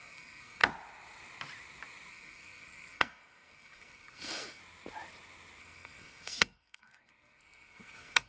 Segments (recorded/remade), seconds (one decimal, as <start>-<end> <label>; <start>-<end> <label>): 0.0-0.6 remade; 0.6-2.1 recorded; 2.1-4.6 remade; 4.6-5.6 recorded; 5.6-8.3 remade